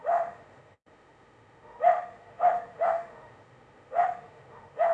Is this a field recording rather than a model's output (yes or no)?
no